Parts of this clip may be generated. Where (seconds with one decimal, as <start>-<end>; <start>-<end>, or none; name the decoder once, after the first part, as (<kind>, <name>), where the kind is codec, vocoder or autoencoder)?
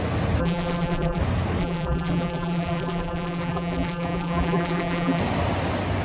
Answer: 0.4-1.2 (vocoder, BigVGAN v2); 1.6-5.2